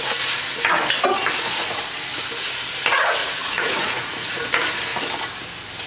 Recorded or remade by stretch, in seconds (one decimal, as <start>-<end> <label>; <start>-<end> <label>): 0.0-3.2 recorded; 3.2-4.4 remade; 4.4-5.9 recorded